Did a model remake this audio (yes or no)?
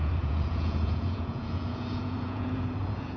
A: yes